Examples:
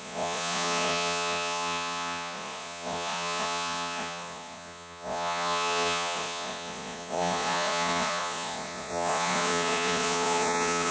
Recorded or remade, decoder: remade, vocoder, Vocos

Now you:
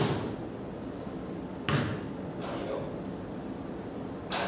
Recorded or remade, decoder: recorded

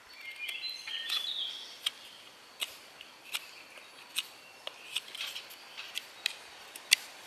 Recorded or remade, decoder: recorded